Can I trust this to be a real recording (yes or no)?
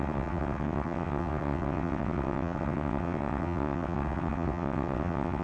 no